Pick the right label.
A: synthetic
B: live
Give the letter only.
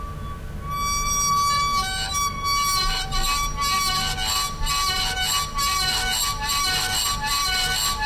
B